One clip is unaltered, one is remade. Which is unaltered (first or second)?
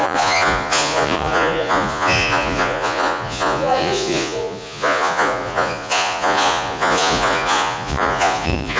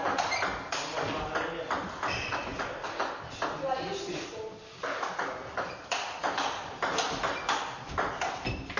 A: second